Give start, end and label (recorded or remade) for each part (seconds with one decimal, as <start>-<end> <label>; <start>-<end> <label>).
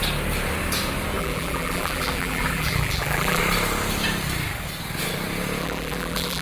0.0-1.2 recorded; 1.2-3.4 remade; 3.4-5.6 recorded; 5.6-6.4 remade